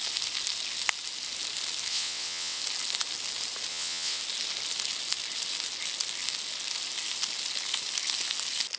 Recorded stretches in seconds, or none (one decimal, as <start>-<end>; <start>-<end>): 0.0-1.9; 2.6-3.7; 4.2-8.8

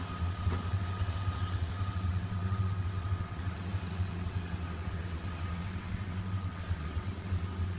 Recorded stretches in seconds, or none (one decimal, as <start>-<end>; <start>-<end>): none

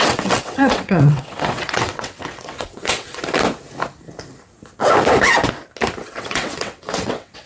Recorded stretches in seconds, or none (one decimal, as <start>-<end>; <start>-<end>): 3.2-6.0

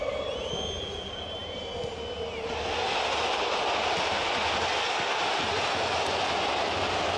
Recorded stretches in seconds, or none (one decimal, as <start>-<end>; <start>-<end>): 0.0-7.2